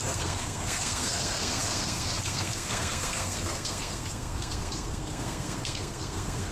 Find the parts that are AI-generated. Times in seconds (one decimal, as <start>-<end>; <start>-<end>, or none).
0.0-6.5